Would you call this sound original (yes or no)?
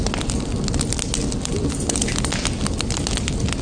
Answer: yes